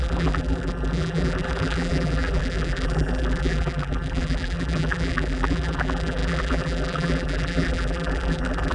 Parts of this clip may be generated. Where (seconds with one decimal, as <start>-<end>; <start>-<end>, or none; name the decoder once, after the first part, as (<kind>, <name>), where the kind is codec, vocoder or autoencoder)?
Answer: 0.0-8.7 (vocoder, BigVGAN v2)